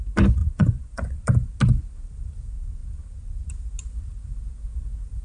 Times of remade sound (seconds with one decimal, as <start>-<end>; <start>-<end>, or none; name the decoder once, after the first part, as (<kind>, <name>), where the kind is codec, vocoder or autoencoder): 0.4-1.2 (vocoder, Vocos)